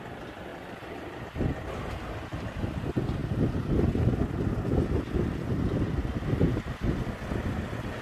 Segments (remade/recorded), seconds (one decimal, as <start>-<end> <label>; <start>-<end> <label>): 0.0-8.0 recorded